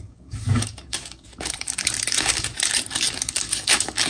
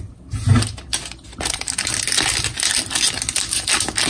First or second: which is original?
second